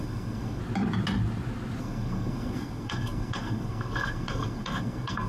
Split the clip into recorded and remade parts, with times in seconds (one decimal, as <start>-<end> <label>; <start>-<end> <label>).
0.0-0.6 remade; 0.6-1.8 recorded; 1.8-5.3 remade